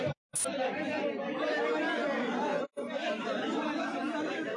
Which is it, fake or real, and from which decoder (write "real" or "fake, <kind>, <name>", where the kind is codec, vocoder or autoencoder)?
real